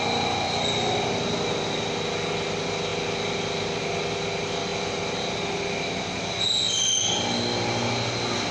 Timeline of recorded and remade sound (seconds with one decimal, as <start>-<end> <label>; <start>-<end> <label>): 0.0-8.5 recorded